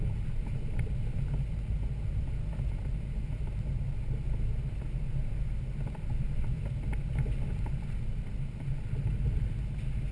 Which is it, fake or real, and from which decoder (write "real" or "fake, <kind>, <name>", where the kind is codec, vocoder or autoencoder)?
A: real